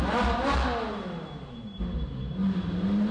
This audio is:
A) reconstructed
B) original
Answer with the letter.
B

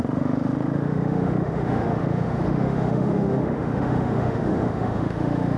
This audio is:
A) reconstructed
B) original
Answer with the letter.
A